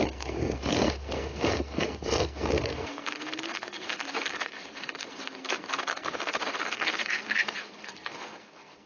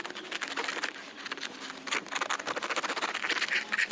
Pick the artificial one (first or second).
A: first